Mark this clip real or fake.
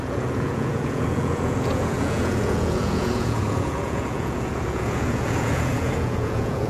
fake